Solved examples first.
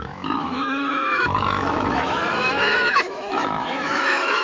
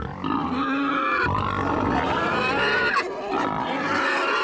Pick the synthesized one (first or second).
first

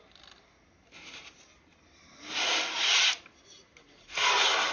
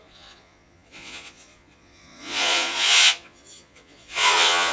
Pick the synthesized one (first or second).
second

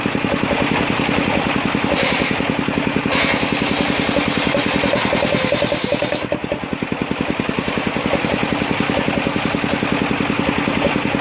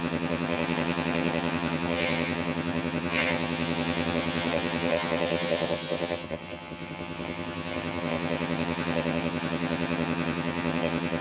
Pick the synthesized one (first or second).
second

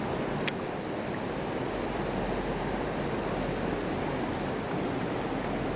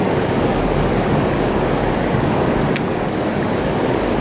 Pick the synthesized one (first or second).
second